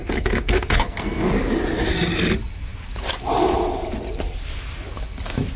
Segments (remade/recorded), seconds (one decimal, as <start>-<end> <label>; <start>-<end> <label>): 0.0-1.3 remade; 1.3-5.6 recorded